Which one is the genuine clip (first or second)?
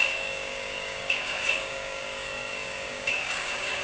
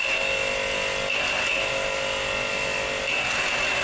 second